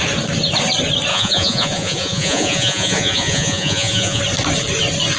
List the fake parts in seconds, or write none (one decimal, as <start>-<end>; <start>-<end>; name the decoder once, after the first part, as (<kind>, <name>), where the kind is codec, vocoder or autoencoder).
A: 1.1-4.2 (vocoder, Vocos)